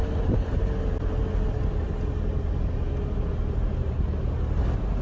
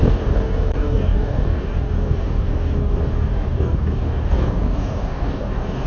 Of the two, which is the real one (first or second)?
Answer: first